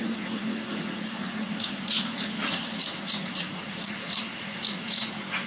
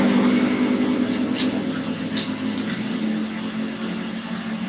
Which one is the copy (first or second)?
first